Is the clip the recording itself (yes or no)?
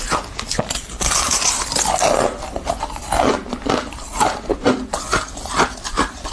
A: yes